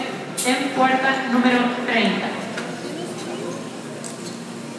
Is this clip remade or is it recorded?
recorded